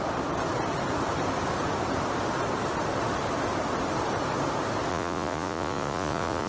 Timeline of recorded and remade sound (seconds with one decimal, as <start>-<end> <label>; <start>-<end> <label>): 0.0-4.9 recorded; 4.9-6.5 remade

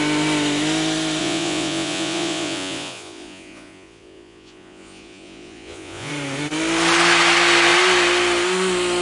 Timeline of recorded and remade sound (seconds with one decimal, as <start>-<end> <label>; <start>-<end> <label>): 0.0-1.2 recorded; 1.2-6.1 remade; 6.1-9.0 recorded

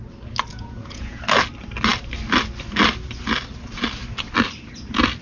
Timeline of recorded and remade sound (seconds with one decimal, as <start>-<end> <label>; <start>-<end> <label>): 0.0-0.5 recorded; 0.5-1.2 remade; 1.2-5.2 recorded

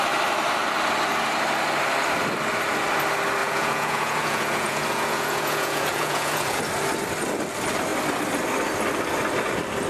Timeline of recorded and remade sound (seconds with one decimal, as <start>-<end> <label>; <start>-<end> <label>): 0.0-3.4 recorded; 3.4-6.6 remade; 6.6-9.9 recorded